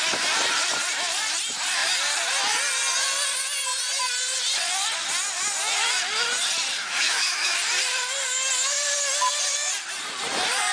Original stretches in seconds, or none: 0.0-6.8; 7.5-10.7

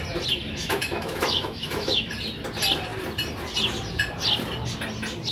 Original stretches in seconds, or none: 0.0-0.6; 2.1-5.3

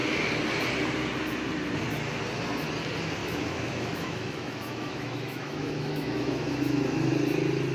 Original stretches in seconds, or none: 0.0-3.2; 7.1-7.7

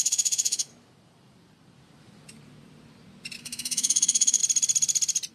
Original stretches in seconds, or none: 0.7-3.4; 4.4-5.3